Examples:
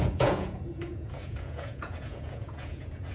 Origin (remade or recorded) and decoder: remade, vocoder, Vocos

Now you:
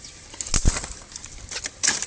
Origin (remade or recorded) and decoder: recorded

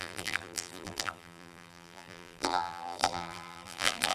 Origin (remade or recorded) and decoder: remade, vocoder, BigVGAN v2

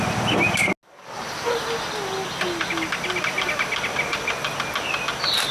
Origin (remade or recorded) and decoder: recorded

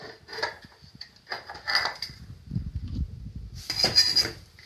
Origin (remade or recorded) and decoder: recorded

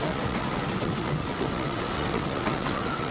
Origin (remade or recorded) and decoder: remade, vocoder, WaveNeXt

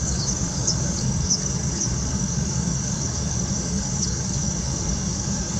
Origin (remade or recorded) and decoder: remade, codec, DAC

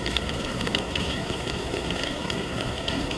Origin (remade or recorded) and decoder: remade, codec, SNAC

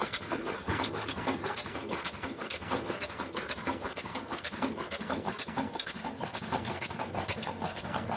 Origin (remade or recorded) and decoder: remade, codec, SNAC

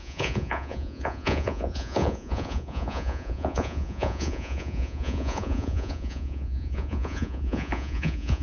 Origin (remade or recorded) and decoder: remade, vocoder, Vocos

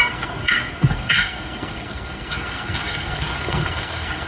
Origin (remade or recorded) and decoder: remade, codec, SNAC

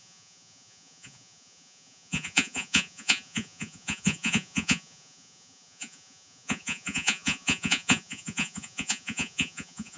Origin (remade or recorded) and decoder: remade, vocoder, Vocos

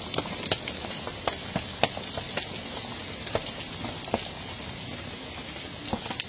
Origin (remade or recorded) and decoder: recorded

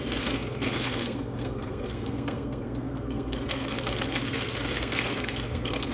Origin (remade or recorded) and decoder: remade, codec, SNAC